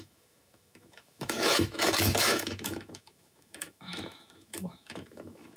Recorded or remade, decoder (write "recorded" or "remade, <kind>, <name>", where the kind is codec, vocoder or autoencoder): remade, autoencoder, DAC-VAE